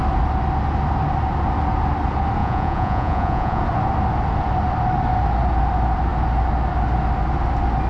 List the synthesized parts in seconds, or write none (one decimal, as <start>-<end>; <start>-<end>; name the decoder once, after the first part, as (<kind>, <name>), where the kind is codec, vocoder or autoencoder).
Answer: 2.4-3.6 (vocoder, Vocos)